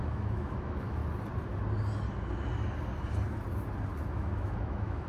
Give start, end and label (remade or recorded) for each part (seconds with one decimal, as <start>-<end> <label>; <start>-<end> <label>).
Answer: 0.0-1.0 remade; 1.0-4.1 recorded; 4.1-5.1 remade